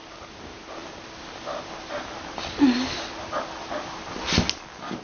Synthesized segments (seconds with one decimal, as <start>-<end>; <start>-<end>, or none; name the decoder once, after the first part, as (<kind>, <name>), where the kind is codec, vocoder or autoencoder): none